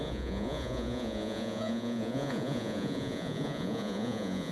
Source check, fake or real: fake